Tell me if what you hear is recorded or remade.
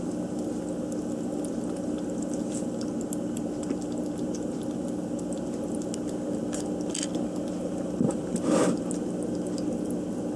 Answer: recorded